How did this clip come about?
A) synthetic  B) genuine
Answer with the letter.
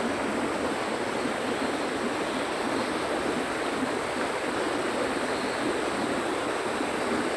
B